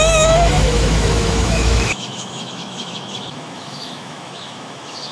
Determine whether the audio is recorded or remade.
remade